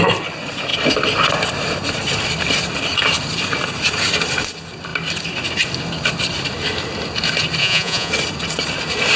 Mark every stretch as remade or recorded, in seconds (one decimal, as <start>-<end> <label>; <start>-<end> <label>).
0.0-7.6 recorded; 7.6-8.1 remade; 8.1-9.2 recorded